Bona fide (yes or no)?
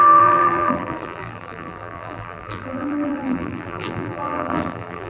no